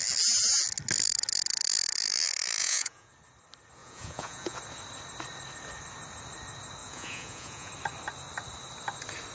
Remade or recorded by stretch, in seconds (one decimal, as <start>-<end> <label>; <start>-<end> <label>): 0.0-2.6 recorded; 2.6-3.1 remade; 3.1-3.8 recorded; 3.8-4.6 remade; 4.6-6.8 recorded; 6.8-7.7 remade; 7.7-9.3 recorded